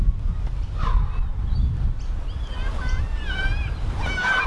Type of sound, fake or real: real